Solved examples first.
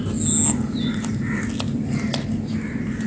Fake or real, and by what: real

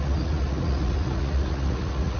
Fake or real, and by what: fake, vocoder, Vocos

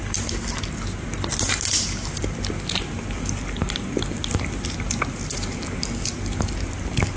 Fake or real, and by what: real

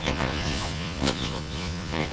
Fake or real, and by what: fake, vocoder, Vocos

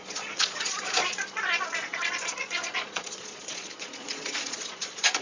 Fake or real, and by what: fake, vocoder, Vocos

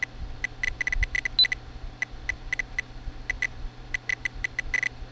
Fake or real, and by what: real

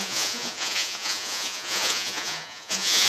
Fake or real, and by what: fake, vocoder, Vocos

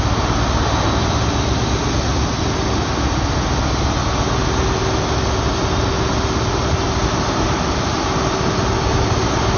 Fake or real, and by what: real